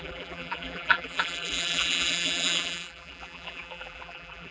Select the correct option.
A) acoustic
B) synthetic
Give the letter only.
B